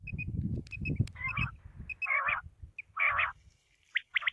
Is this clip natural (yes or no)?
yes